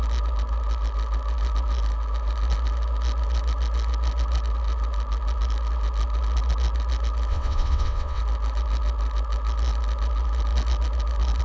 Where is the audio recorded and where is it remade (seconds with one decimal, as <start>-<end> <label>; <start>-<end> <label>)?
0.0-7.3 recorded; 7.3-8.2 remade; 8.2-11.4 recorded